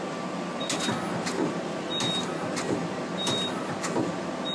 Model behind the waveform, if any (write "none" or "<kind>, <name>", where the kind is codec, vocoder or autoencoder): none